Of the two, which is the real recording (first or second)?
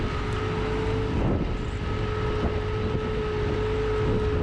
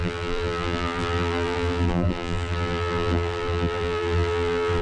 first